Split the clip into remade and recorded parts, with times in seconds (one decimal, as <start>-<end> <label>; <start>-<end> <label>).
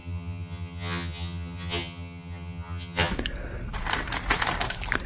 0.0-3.1 remade; 3.1-5.1 recorded